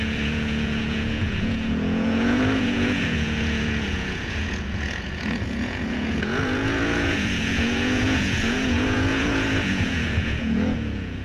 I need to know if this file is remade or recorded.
remade